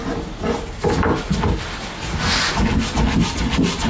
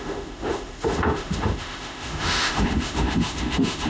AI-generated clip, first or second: second